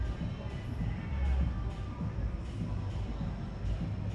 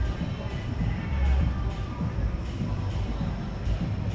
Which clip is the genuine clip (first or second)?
first